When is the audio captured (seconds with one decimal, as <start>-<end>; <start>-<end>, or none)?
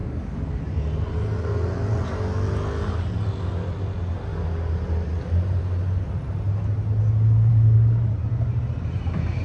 0.6-7.5; 8.1-9.4